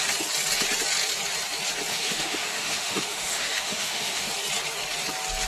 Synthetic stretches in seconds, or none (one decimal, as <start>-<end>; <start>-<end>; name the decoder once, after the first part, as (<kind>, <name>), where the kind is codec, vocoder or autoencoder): 1.9-4.3 (autoencoder, DAC-VAE)